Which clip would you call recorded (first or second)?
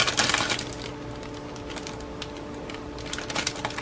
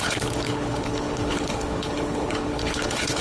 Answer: first